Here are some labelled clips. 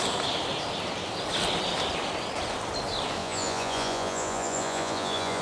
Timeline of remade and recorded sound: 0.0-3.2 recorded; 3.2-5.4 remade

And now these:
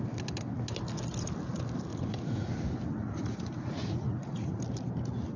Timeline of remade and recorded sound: 0.0-1.9 recorded; 1.9-2.5 remade; 2.5-3.0 recorded; 3.0-4.6 remade; 4.6-5.4 recorded

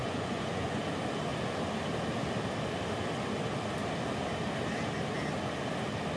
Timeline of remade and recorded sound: 0.0-0.8 remade; 0.8-6.2 recorded